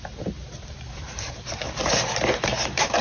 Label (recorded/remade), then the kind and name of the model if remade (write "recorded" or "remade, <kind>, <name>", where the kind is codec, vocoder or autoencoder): remade, vocoder, BigVGAN v2